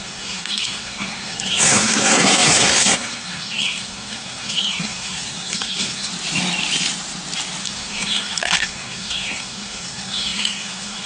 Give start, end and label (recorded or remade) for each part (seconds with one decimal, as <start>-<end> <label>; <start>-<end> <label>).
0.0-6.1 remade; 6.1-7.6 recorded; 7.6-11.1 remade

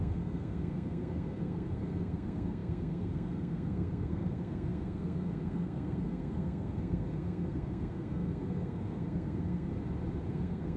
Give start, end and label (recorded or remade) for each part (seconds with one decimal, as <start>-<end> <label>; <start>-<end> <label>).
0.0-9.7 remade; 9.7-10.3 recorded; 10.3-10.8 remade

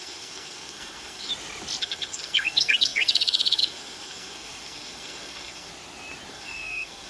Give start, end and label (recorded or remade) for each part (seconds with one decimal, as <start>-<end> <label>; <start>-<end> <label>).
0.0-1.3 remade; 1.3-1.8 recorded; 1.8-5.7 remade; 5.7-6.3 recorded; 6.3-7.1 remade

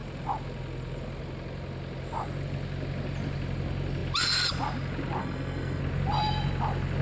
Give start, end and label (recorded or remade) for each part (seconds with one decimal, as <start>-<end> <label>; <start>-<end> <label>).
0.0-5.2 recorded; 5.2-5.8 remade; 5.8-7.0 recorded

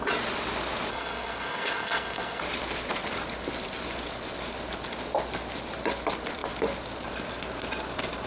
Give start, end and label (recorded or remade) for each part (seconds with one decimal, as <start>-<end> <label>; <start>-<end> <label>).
0.0-0.9 recorded; 0.9-2.4 remade; 2.4-8.3 recorded

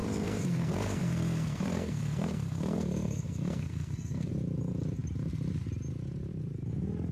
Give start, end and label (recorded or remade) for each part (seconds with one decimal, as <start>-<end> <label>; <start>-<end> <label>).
0.0-4.3 remade; 4.3-7.1 recorded

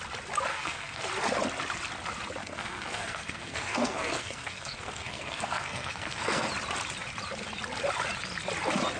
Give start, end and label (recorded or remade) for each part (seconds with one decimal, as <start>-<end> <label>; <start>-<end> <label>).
0.0-0.5 recorded; 0.5-1.0 remade; 1.0-2.4 recorded; 2.4-6.5 remade; 6.5-9.0 recorded

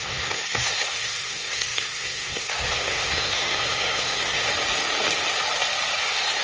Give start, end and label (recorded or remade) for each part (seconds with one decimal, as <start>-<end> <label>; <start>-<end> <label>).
0.0-4.5 remade; 4.5-6.0 recorded; 6.0-6.4 remade